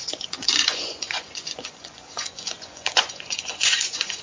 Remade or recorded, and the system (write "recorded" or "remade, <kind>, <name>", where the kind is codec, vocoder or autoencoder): remade, vocoder, Vocos